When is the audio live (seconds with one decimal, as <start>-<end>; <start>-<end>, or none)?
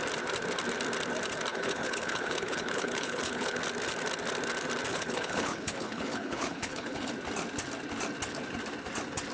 0.0-1.5; 3.6-4.9; 7.1-9.3